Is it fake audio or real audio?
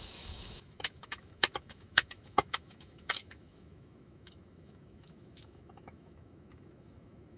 fake